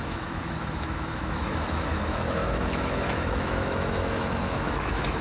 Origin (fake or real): fake